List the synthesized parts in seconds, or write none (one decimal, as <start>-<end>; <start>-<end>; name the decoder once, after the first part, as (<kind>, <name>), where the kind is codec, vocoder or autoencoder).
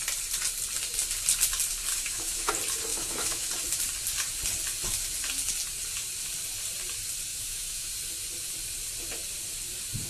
1.9-2.5 (autoencoder, DAC-VAE); 2.9-3.5; 7.3-7.9